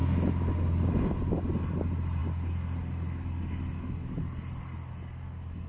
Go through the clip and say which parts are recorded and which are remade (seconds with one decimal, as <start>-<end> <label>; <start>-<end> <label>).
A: 0.0-5.7 recorded